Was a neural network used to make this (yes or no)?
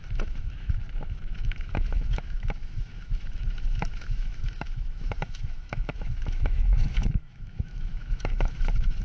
yes